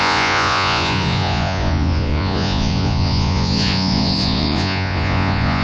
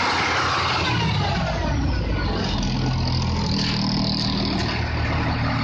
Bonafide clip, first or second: second